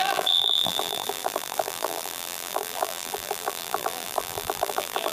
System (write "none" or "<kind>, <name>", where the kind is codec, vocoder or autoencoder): vocoder, BigVGAN v2